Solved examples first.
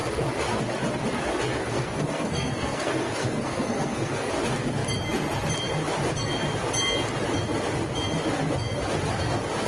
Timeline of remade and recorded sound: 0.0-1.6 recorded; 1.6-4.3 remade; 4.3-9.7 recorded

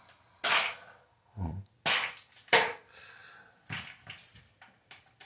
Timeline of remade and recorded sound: 0.0-1.0 recorded; 1.0-1.7 remade; 1.7-5.2 recorded

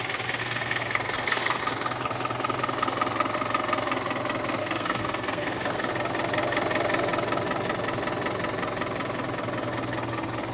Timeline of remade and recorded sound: 0.0-0.4 recorded; 0.4-1.6 remade; 1.6-4.6 recorded; 4.6-5.9 remade; 5.9-10.5 recorded

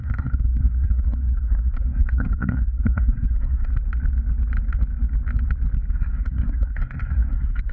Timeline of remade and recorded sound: 0.0-3.7 remade; 3.7-5.9 recorded; 5.9-7.7 remade

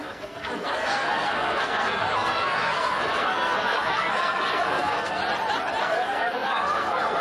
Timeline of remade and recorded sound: 0.0-5.2 remade; 5.2-5.8 recorded; 5.8-7.2 remade